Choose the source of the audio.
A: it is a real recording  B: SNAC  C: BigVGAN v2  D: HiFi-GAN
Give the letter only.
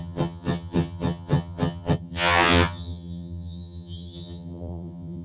D